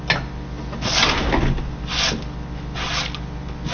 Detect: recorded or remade recorded